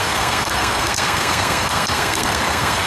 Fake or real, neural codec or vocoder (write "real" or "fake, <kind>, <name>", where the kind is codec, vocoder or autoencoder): fake, codec, SNAC